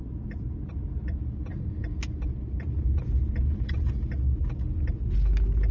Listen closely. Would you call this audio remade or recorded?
recorded